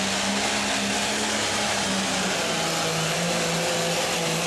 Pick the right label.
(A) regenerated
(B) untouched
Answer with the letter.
B